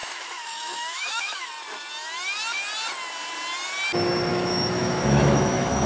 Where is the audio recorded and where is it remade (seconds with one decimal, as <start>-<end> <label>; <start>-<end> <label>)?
0.0-1.5 remade; 1.5-4.3 recorded; 4.3-5.9 remade